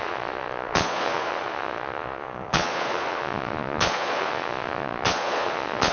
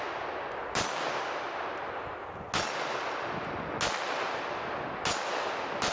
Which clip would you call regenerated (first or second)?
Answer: first